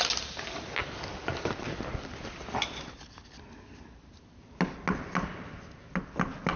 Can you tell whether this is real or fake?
real